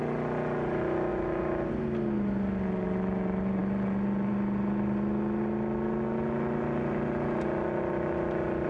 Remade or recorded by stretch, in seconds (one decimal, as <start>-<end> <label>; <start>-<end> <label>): 0.0-8.7 recorded